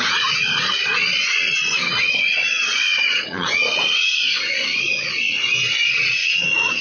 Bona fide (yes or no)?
no